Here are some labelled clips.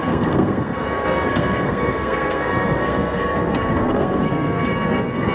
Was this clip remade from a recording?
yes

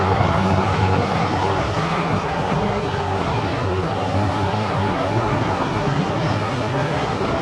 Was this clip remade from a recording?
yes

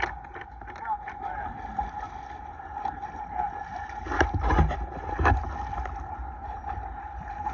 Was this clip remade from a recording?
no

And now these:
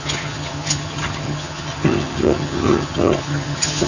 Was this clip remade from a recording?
yes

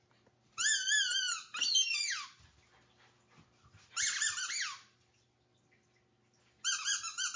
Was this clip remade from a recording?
no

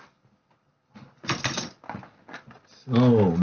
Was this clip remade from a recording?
no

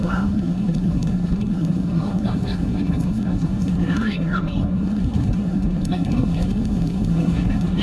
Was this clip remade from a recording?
yes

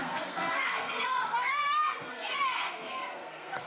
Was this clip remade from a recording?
yes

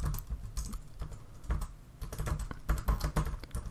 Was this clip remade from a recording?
no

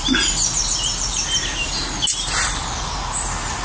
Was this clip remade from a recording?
no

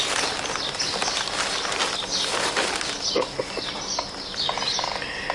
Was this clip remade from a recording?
no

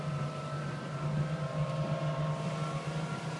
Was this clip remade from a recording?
no